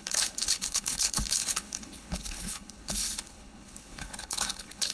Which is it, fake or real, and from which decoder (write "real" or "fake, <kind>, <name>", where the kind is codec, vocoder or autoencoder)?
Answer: fake, codec, HILCodec